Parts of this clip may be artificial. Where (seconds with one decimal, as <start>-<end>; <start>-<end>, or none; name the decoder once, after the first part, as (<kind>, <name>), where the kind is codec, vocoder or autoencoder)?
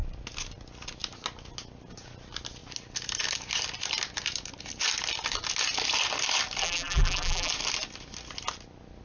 6.6-7.5 (vocoder, BigVGAN v2)